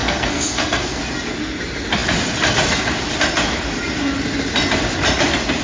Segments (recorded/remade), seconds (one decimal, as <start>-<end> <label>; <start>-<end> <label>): 0.0-1.0 remade; 1.0-5.6 recorded